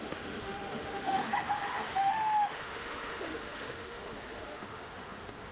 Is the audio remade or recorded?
remade